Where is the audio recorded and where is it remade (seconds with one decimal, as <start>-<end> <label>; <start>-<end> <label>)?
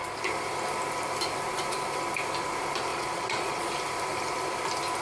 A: 0.0-2.9 recorded; 2.9-3.7 remade; 3.7-5.0 recorded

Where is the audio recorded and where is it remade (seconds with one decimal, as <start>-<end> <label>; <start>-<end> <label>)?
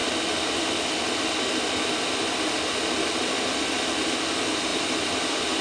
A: 0.0-5.6 recorded